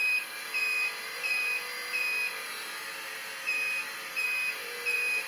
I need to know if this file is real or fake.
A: fake